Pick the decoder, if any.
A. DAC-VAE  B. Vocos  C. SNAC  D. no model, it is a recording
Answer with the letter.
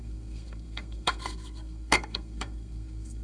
C